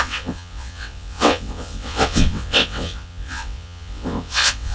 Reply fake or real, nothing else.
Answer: fake